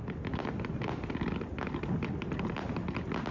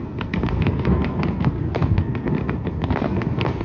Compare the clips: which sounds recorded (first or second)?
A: first